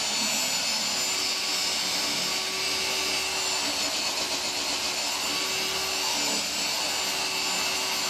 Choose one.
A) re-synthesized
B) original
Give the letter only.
B